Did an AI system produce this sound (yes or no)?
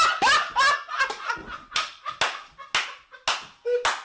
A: no